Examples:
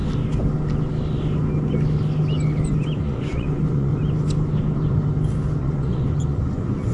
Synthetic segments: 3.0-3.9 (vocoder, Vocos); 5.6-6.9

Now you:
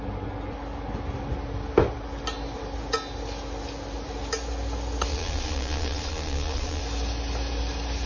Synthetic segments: 5.1-6.8 (vocoder, Vocos)

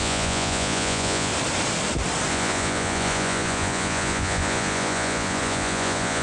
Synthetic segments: 0.0-1.3 (vocoder, Vocos); 2.3-6.2

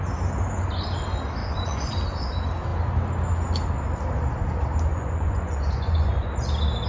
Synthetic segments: 1.4-1.9 (vocoder, Vocos); 4.9-6.3

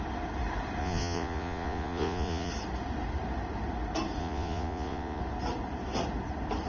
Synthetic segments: 0.8-2.5 (vocoder, Vocos); 4.2-5.2